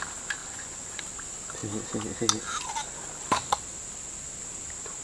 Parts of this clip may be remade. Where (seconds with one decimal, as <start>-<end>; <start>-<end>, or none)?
0.4-1.0